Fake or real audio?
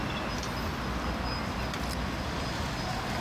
real